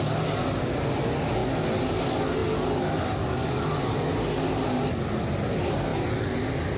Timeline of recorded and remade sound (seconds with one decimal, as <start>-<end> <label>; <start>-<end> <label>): 0.0-6.8 recorded